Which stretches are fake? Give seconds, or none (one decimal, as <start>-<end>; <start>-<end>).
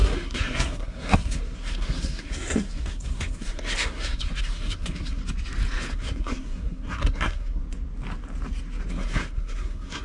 0.0-5.2; 5.9-7.6; 8.9-10.0